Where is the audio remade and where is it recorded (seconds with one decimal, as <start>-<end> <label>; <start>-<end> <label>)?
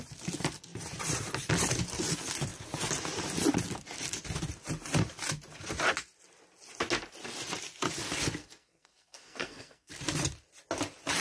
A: 0.0-8.4 recorded; 8.4-9.9 remade; 9.9-11.2 recorded